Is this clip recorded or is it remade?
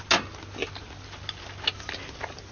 recorded